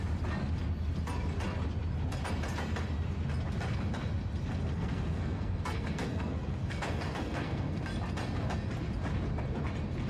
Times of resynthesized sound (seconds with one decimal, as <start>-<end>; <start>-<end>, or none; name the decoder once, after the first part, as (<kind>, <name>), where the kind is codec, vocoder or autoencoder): 4.5-7.8 (codec, SNAC)